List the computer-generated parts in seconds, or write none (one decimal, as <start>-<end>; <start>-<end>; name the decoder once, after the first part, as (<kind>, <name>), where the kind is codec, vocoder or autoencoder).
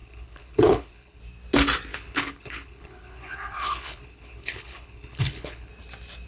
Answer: 0.0-1.2 (codec, HILCodec); 1.9-5.7